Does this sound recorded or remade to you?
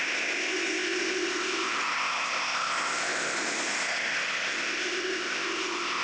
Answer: remade